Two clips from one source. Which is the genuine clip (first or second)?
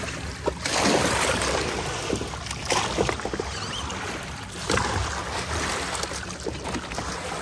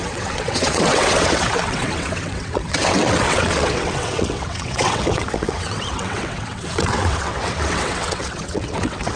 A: first